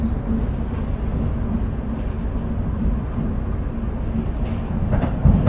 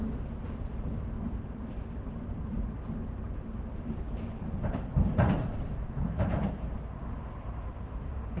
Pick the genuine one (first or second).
first